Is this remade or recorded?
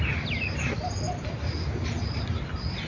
recorded